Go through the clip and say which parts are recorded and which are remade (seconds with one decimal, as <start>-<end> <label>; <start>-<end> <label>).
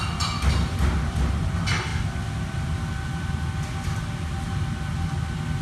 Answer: 0.0-5.6 recorded